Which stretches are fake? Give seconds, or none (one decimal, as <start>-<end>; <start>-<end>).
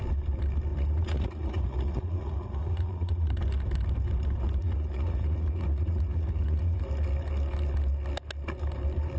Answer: 0.7-3.4; 4.6-6.8